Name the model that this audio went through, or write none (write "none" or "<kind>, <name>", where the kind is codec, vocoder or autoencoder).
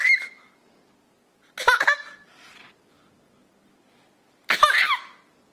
none